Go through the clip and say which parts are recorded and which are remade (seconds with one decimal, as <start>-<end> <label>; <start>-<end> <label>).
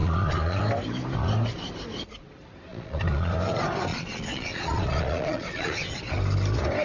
0.0-0.6 remade; 0.6-2.7 recorded; 2.7-3.3 remade; 3.3-3.9 recorded; 3.9-6.0 remade; 6.0-6.8 recorded